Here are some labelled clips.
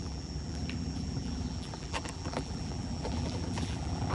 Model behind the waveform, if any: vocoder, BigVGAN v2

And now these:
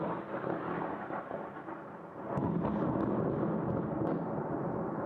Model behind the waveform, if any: none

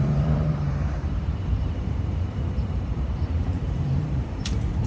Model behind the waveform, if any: vocoder, BigVGAN v2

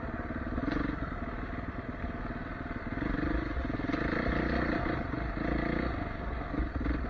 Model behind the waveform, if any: none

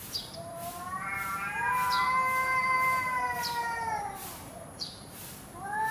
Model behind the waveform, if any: vocoder, BigVGAN v2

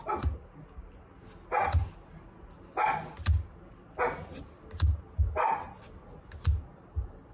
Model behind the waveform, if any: none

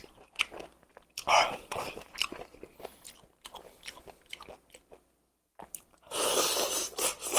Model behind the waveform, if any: none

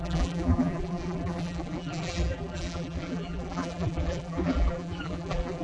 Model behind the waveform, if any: vocoder, BigVGAN v2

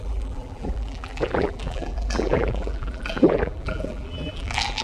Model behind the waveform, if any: vocoder, BigVGAN v2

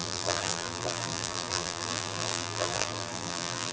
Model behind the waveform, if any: vocoder, BigVGAN v2